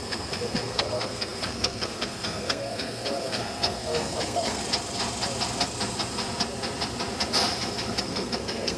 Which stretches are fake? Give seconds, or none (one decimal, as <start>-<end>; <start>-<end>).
0.0-4.6; 8.0-8.8